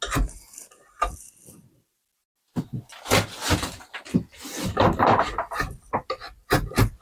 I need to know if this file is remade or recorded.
recorded